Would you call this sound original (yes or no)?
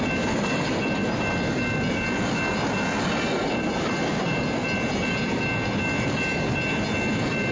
yes